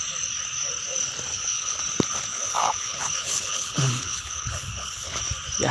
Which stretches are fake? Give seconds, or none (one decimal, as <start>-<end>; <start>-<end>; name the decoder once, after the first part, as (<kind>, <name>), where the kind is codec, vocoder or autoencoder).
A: 1.3-1.8 (codec, HILCodec); 2.3-5.2